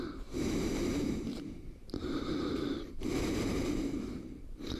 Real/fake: fake